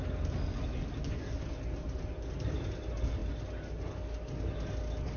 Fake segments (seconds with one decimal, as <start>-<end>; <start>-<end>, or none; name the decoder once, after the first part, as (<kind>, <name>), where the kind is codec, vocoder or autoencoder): none